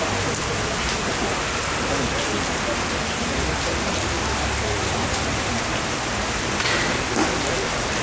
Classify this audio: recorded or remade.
recorded